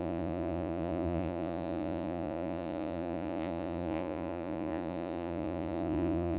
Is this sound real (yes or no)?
no